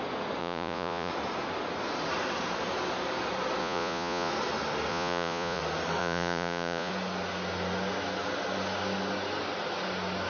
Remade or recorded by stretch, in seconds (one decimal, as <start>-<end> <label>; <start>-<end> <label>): 0.0-0.4 recorded; 0.4-1.1 remade; 1.1-3.6 recorded; 3.6-4.3 remade; 4.3-4.9 recorded; 4.9-5.6 remade; 5.6-6.0 recorded; 6.0-6.9 remade; 6.9-10.3 recorded